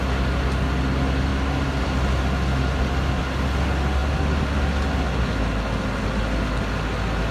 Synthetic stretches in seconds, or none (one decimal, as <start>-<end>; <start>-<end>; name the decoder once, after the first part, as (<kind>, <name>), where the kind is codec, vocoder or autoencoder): none